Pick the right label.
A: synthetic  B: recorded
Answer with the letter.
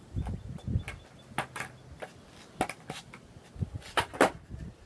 B